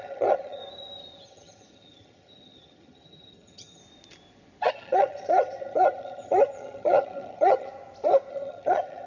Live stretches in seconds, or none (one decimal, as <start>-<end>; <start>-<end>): 0.6-1.2; 3.8-4.7; 7.7-8.3